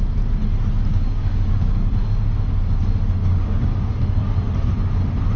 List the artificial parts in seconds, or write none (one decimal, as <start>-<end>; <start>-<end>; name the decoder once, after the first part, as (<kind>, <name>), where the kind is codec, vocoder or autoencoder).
0.9-1.8 (codec, DAC); 3.2-3.9